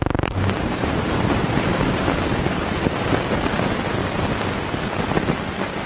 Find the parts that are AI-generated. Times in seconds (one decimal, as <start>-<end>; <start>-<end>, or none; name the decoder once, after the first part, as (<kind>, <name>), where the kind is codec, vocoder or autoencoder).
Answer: none